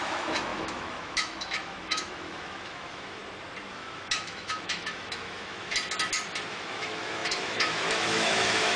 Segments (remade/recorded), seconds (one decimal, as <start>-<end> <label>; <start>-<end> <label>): 0.0-3.2 remade; 3.2-3.7 recorded; 3.7-5.7 remade; 5.7-6.5 recorded; 6.5-8.8 remade